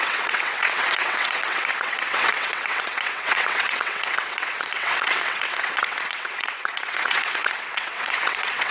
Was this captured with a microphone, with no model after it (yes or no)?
no